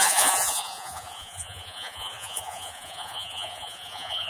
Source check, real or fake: fake